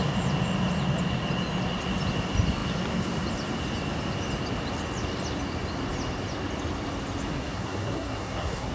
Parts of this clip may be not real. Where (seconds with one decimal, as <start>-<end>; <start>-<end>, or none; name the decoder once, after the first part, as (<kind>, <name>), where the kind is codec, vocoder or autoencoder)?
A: 7.3-8.7 (codec, SNAC)